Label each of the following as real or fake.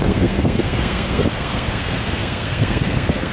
fake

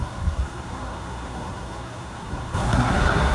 fake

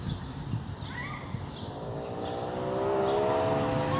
real